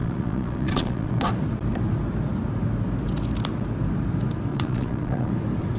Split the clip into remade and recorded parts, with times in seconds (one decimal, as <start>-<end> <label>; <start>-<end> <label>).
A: 0.0-1.3 remade; 1.3-4.5 recorded; 4.5-5.3 remade; 5.3-5.8 recorded